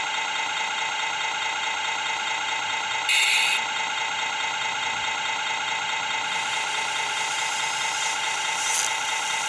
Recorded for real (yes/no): yes